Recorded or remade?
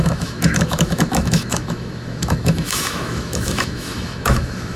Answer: remade